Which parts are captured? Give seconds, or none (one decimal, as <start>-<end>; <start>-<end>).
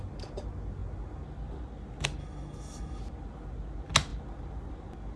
0.0-2.2; 3.0-5.2